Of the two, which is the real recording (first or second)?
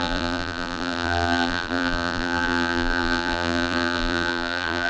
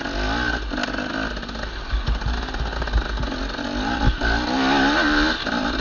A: second